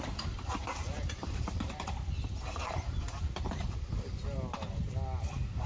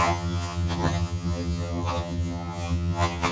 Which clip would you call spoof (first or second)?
second